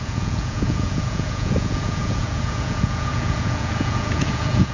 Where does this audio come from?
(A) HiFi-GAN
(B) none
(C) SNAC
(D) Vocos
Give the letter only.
D